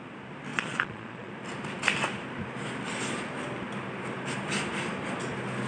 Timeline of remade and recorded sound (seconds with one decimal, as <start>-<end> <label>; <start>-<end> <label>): 0.0-0.5 recorded; 0.5-1.3 remade; 1.3-5.7 recorded